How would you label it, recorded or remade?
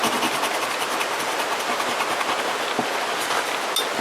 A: recorded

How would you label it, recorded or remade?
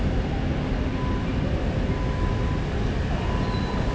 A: recorded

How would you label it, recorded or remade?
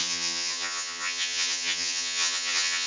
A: remade